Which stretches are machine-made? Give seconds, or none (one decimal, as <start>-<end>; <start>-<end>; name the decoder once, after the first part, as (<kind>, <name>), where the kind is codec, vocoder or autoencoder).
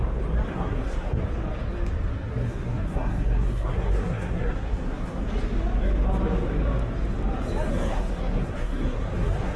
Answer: 0.5-1.2 (codec, SNAC); 2.1-5.2; 7.7-9.6